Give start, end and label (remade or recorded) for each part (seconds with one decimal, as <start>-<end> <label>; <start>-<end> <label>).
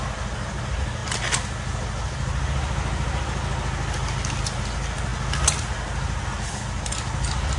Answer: 0.0-7.6 recorded